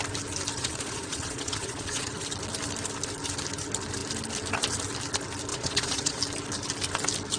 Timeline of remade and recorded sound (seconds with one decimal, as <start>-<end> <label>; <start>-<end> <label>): 0.0-0.6 recorded; 0.6-2.1 remade; 2.1-5.5 recorded; 5.5-6.2 remade; 6.2-7.4 recorded